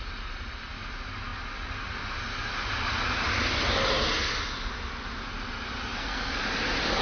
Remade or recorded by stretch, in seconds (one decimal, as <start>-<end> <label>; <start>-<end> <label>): 0.0-5.9 recorded; 5.9-6.4 remade; 6.4-7.0 recorded